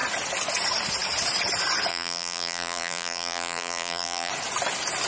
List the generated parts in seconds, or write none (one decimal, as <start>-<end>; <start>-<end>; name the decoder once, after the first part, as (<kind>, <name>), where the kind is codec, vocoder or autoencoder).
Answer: 1.9-4.3 (vocoder, BigVGAN v2)